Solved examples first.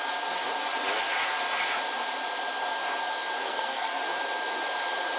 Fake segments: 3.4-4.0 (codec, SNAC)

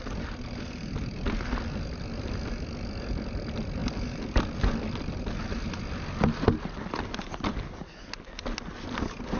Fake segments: none